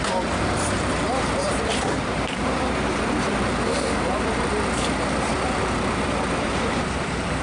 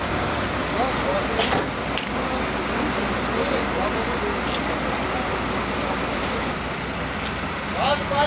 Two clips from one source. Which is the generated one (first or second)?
first